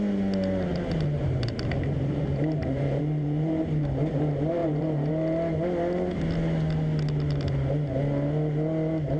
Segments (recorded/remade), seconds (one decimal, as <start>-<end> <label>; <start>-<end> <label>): 0.0-0.7 recorded; 0.7-3.6 remade; 3.6-4.6 recorded; 4.6-5.1 remade; 5.1-9.2 recorded